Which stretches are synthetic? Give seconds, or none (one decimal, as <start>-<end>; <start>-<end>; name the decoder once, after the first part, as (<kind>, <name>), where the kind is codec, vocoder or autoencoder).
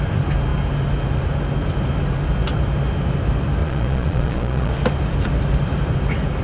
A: 3.6-4.7 (vocoder, Vocos)